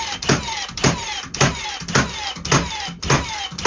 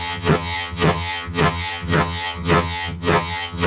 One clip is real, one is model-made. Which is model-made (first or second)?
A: second